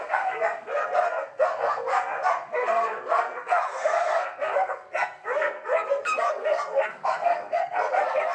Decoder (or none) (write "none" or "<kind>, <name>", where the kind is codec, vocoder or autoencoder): codec, SNAC